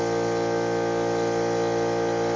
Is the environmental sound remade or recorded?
recorded